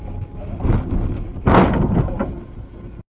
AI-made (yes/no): no